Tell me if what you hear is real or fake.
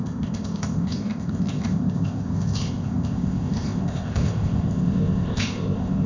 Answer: fake